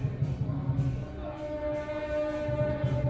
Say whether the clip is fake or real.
real